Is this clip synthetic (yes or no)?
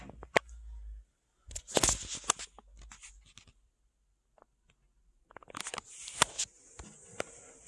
no